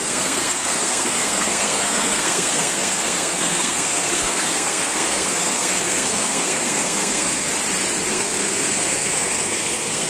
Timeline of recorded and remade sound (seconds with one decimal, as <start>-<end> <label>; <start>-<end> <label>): 0.0-7.5 remade; 7.5-8.1 recorded; 8.1-10.1 remade